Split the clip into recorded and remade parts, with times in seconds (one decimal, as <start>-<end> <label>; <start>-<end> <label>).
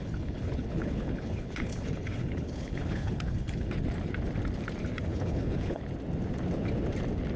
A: 0.0-3.7 remade; 3.7-5.1 recorded; 5.1-5.8 remade; 5.8-7.4 recorded